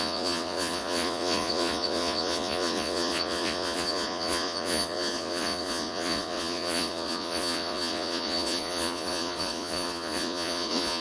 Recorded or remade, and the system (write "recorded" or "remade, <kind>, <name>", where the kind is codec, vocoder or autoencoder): remade, vocoder, Vocos